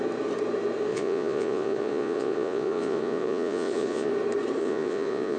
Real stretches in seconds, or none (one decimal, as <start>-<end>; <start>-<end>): 0.0-0.9; 4.1-4.6